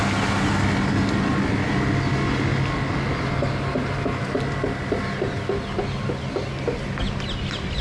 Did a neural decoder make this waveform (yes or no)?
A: no